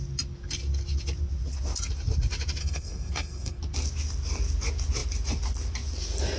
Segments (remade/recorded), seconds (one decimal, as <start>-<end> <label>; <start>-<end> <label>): 0.0-2.6 recorded; 2.6-3.6 remade; 3.6-6.4 recorded